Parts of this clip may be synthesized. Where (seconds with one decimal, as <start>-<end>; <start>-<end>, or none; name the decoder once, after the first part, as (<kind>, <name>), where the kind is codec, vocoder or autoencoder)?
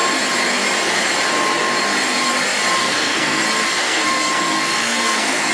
2.8-3.4 (codec, SNAC); 3.8-5.5